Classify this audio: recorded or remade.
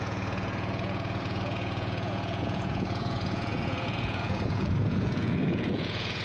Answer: remade